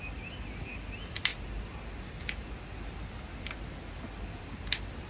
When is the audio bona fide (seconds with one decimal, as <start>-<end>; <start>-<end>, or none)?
0.0-5.1